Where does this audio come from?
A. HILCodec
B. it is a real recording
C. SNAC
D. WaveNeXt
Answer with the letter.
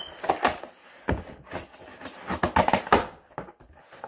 B